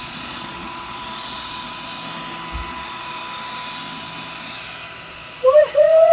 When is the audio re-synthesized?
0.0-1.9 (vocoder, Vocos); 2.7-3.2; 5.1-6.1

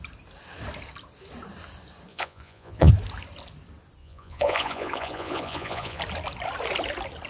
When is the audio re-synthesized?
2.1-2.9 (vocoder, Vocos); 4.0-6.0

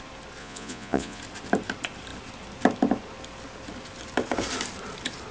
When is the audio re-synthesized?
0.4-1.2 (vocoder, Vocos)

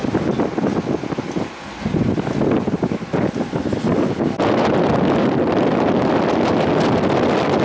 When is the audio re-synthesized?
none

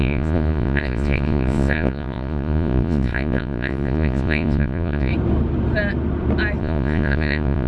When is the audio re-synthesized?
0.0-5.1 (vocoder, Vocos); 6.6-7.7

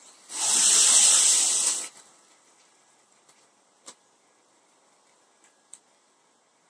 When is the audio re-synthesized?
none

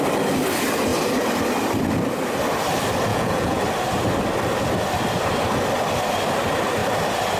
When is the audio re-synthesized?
3.1-3.6 (vocoder, Vocos)